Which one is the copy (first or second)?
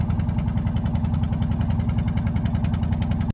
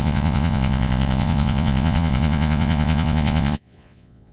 second